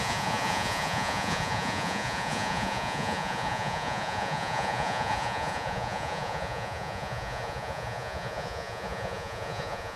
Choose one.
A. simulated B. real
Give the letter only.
A